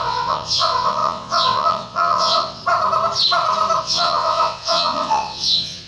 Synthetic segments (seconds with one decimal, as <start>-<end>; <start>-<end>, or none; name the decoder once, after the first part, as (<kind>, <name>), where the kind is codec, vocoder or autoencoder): 0.0-2.6 (vocoder, WaveNeXt); 3.8-5.9